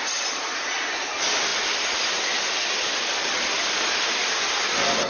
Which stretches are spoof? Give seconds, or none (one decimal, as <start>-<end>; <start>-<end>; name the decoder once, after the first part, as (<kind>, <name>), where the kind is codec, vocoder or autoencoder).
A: none